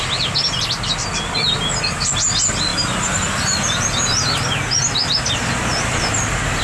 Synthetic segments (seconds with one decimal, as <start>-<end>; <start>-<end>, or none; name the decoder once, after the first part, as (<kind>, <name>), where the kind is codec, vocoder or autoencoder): none